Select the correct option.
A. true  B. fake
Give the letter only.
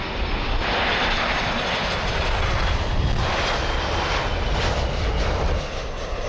A